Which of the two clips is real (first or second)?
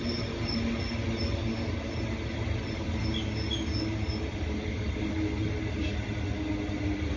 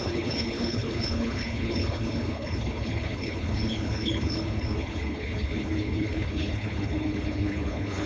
first